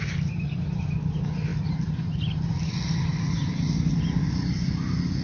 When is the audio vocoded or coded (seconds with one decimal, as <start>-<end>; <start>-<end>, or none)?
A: 1.5-3.5